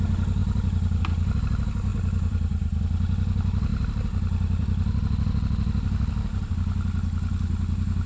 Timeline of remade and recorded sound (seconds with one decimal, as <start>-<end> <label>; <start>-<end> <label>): 0.0-0.4 recorded; 0.4-1.0 remade; 1.0-1.9 recorded; 1.9-2.8 remade; 2.8-3.7 recorded; 3.7-6.5 remade; 6.5-8.1 recorded